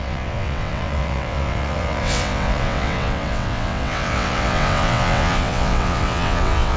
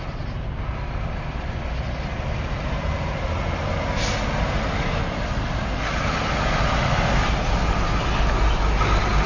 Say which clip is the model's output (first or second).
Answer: first